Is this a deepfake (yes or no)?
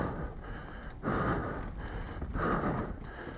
no